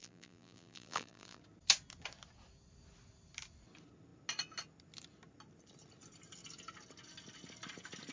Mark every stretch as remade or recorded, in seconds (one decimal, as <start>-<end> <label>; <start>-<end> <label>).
0.0-1.4 remade; 1.4-8.1 recorded